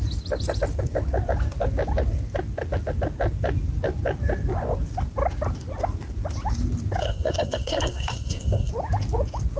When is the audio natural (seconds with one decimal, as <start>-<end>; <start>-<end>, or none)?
0.0-7.0; 8.7-9.6